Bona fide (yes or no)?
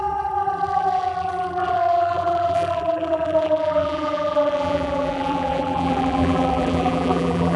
no